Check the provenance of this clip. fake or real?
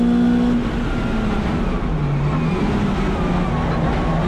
real